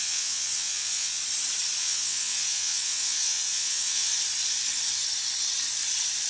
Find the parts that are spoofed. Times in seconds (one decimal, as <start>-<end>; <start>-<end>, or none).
0.0-1.2; 1.8-4.1